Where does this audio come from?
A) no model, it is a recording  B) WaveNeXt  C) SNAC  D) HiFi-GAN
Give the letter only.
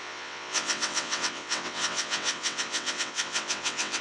B